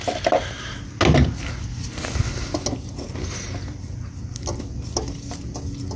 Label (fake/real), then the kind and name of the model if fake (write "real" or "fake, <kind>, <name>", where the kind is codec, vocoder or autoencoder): real